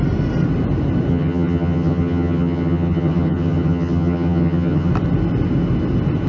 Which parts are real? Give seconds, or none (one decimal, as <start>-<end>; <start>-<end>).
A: 0.0-1.1; 4.9-6.3